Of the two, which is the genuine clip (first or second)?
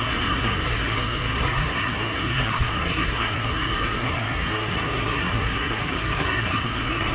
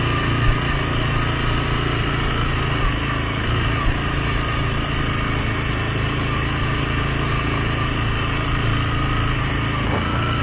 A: second